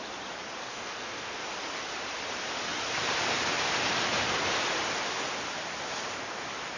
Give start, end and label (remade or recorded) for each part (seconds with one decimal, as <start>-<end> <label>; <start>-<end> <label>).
0.0-0.7 recorded; 0.7-1.4 remade; 1.4-6.8 recorded